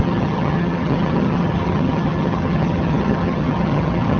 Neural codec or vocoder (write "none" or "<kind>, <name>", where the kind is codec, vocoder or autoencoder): vocoder, HiFi-GAN